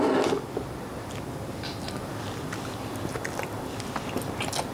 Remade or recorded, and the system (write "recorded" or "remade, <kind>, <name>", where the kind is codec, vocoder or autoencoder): recorded